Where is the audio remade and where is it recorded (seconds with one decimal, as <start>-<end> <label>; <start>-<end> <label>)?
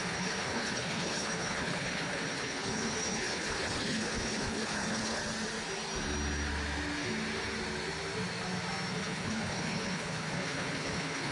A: 0.0-5.2 remade; 5.2-8.9 recorded; 8.9-11.3 remade